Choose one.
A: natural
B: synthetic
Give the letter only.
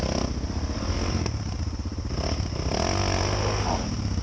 A